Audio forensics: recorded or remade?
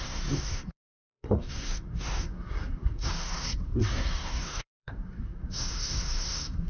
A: remade